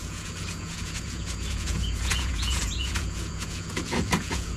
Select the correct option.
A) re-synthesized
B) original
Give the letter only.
A